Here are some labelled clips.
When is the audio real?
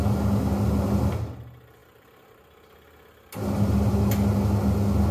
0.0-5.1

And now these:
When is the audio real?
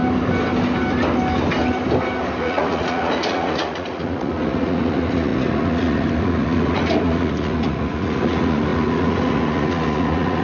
0.0-2.4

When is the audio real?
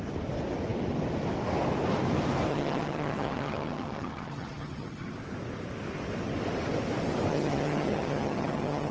0.0-2.5; 5.1-7.3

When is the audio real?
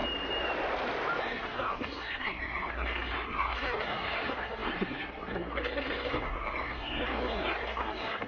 0.0-1.2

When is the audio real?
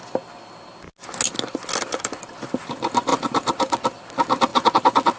0.0-5.2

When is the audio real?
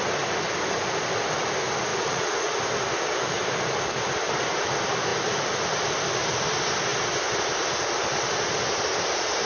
0.0-1.9; 2.6-9.5